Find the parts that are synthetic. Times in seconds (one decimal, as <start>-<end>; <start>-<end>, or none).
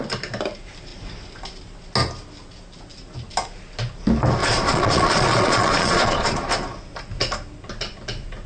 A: 4.4-6.5